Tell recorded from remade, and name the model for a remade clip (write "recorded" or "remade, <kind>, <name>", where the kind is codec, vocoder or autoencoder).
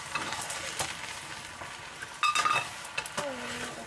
recorded